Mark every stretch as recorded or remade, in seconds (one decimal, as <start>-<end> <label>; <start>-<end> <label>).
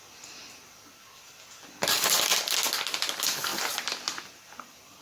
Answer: 0.0-5.0 recorded